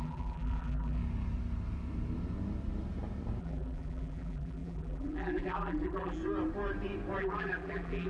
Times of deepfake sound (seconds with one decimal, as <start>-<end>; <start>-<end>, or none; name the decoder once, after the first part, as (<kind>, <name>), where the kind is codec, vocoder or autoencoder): 0.0-1.0 (vocoder, BigVGAN v2); 3.4-6.2; 7.2-8.1